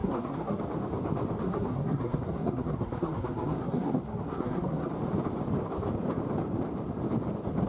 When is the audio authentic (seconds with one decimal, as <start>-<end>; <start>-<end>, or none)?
0.6-1.4; 4.9-7.7